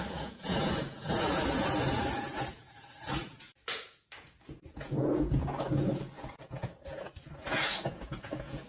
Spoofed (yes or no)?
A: yes